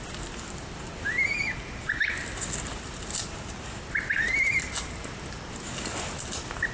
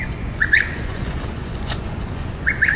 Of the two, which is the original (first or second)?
first